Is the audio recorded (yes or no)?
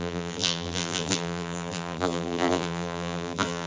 no